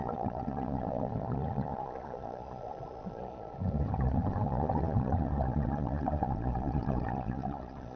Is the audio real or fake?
fake